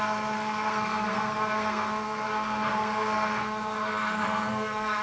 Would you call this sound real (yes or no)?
no